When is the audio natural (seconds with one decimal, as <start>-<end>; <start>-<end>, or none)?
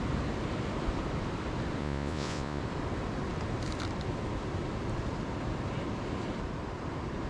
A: 0.0-1.8; 2.6-7.3